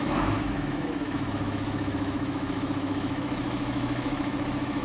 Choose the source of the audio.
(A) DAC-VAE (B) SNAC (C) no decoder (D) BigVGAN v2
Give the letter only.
A